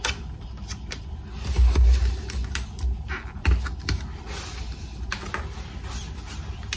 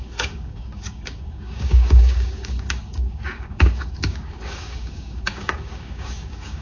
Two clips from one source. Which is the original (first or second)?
first